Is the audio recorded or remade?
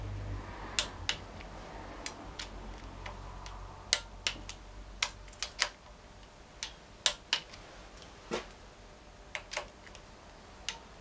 recorded